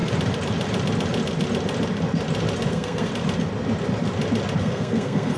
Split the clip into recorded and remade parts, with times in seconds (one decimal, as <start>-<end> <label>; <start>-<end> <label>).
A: 0.0-2.7 recorded; 2.7-3.1 remade; 3.1-4.6 recorded; 4.6-5.4 remade